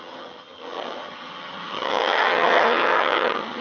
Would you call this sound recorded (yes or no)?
no